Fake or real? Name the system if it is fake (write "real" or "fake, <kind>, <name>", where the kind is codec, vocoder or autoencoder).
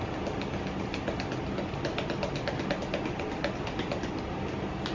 real